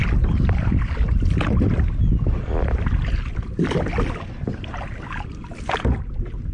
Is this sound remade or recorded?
recorded